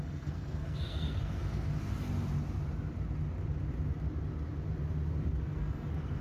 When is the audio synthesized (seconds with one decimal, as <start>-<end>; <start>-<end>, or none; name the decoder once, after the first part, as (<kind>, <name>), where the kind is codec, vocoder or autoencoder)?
0.0-1.7 (codec, SNAC); 5.4-6.2